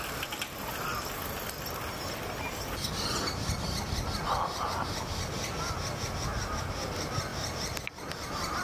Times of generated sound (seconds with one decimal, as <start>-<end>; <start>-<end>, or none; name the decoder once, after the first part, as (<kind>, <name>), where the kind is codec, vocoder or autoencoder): none